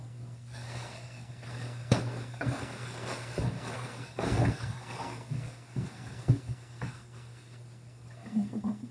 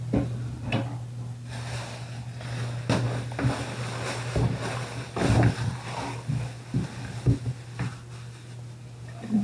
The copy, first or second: first